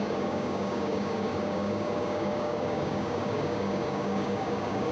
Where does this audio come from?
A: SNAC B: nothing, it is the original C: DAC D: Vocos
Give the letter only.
C